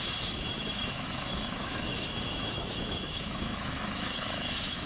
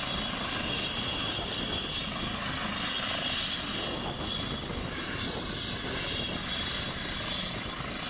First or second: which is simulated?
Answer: first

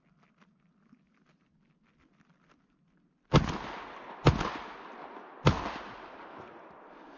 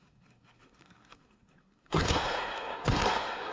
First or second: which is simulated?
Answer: second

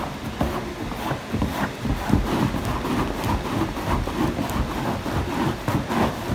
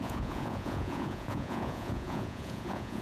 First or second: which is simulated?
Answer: second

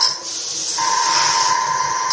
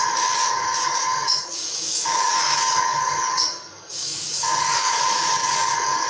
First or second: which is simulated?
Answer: second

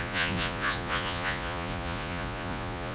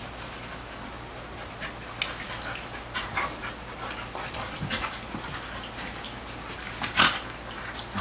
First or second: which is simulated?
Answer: first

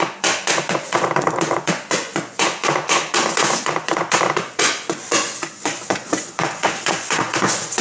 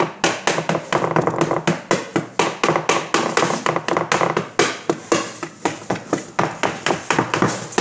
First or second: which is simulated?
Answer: first